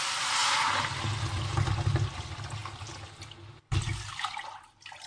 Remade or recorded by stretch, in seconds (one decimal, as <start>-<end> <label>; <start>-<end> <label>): 0.0-5.1 recorded